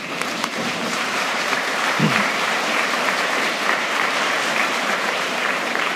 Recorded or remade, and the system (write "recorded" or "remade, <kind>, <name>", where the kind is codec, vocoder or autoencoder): remade, vocoder, BigVGAN v2